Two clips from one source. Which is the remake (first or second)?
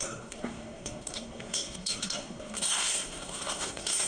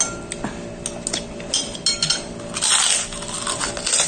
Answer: first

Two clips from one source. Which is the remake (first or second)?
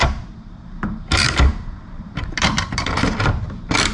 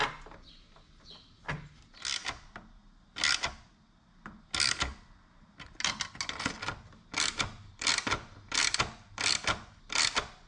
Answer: first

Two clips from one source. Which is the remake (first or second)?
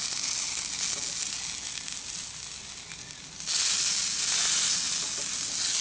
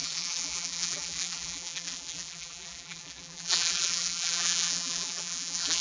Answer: second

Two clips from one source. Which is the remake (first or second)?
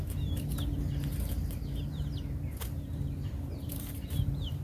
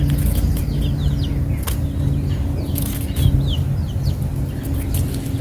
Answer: first